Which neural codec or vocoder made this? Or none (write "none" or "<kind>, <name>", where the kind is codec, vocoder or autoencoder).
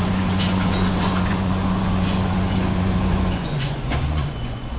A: vocoder, Vocos